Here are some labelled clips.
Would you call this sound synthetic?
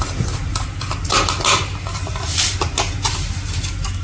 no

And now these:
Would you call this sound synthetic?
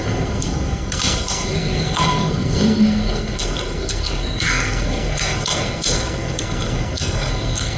yes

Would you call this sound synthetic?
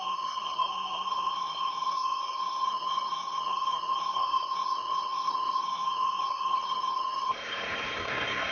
yes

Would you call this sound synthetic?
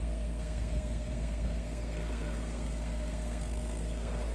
yes